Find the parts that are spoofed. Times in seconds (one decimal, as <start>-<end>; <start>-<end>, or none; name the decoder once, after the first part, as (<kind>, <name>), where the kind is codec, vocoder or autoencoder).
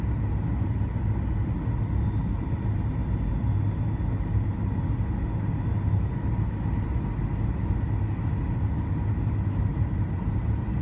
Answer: 9.7-10.8 (vocoder, BigVGAN v2)